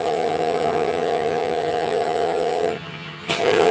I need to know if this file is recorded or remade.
remade